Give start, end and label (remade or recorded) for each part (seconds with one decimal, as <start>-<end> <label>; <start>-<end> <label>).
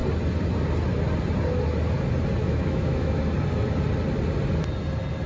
0.0-2.4 recorded; 2.4-3.2 remade; 3.2-5.3 recorded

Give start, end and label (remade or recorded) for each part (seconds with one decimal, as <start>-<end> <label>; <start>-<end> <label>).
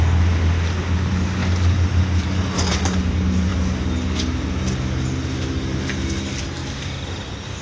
0.0-7.6 recorded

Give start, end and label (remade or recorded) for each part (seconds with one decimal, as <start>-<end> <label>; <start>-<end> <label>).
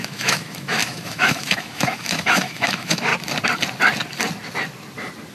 0.0-3.1 remade; 3.1-5.3 recorded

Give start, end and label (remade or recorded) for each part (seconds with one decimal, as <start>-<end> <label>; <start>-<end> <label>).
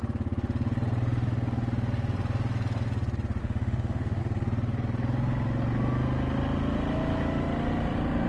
0.0-3.4 recorded; 3.4-4.2 remade; 4.2-8.3 recorded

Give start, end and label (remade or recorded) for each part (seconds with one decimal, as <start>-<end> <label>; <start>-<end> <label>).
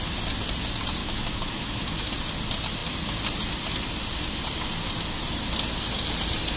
0.0-1.0 recorded; 1.0-2.1 remade; 2.1-6.6 recorded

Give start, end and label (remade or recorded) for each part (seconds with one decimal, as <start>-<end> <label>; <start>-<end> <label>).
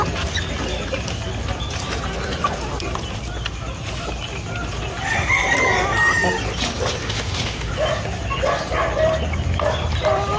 0.0-7.0 recorded; 7.0-7.7 remade; 7.7-10.4 recorded